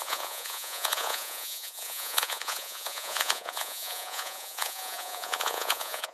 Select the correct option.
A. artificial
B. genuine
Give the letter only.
A